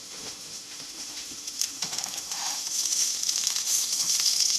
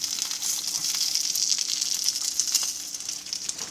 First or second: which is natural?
second